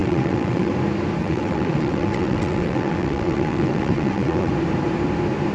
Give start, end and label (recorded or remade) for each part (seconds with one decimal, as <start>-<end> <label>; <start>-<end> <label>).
0.0-0.7 remade; 0.7-1.2 recorded; 1.2-4.5 remade; 4.5-5.5 recorded